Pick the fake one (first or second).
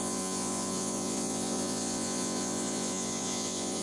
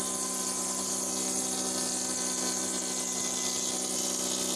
first